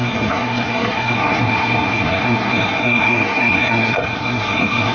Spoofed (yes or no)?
yes